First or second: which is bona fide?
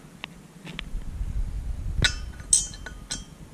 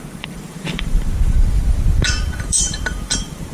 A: first